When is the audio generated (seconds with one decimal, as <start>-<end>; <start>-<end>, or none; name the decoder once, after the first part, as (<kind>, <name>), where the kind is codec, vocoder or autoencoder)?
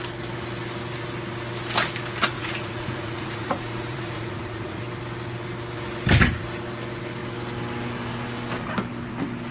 2.2-4.8 (vocoder, Vocos)